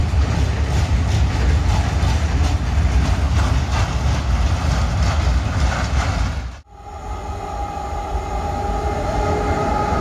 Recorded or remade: recorded